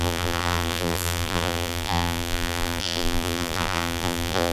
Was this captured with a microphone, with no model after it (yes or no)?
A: no